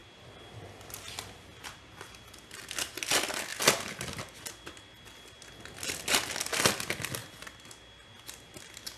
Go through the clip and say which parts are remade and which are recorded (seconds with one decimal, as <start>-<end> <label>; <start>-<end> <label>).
0.0-1.4 remade; 1.4-9.0 recorded